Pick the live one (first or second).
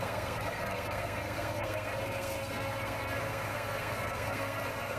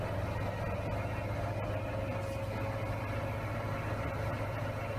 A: second